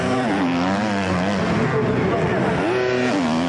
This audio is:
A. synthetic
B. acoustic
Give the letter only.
B